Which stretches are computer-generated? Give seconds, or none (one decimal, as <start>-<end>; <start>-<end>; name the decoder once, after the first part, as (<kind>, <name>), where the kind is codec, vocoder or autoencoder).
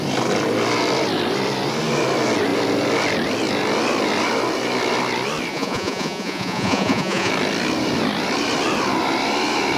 5.5-7.3 (vocoder, Vocos)